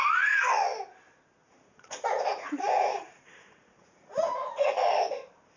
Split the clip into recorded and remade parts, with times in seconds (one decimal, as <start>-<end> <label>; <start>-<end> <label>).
0.0-1.4 recorded; 1.4-4.8 remade; 4.8-5.6 recorded